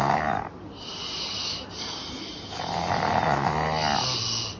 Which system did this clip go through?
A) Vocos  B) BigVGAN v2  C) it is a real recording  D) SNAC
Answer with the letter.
C